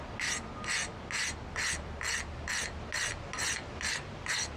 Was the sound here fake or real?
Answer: real